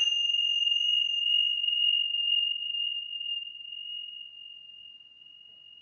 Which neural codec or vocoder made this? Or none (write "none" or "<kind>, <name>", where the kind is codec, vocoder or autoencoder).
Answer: none